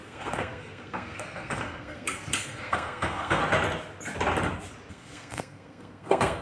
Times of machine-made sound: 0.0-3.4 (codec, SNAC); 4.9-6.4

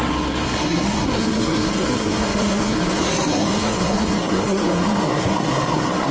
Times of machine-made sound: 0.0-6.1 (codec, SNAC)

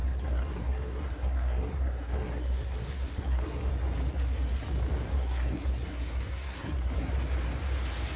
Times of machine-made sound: 0.0-3.7 (codec, SNAC); 5.1-7.1